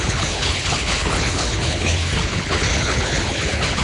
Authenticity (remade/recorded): remade